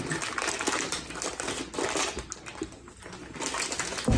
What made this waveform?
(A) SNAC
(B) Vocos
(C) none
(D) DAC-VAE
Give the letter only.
C